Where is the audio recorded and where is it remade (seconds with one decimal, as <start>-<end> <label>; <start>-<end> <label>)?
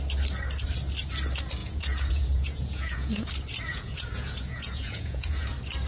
0.0-1.6 recorded; 1.6-3.3 remade; 3.3-3.7 recorded; 3.7-5.5 remade; 5.5-5.9 recorded